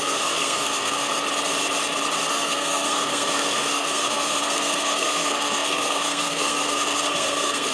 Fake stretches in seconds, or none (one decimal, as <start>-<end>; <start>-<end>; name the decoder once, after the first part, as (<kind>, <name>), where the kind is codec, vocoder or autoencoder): 0.0-1.1 (codec, SNAC); 2.3-7.7